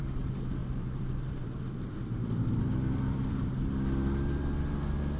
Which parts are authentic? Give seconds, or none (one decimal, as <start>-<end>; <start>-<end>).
0.0-0.6; 3.5-5.2